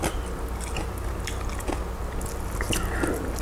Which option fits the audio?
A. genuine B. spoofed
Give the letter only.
A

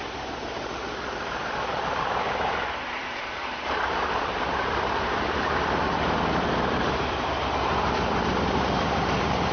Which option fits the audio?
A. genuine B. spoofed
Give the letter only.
B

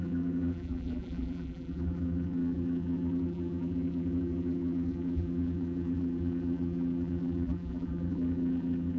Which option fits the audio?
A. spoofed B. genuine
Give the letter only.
A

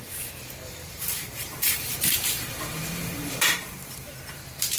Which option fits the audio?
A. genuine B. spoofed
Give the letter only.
B